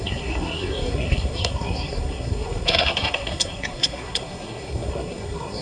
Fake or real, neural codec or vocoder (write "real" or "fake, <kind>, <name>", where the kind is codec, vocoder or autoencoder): fake, codec, SNAC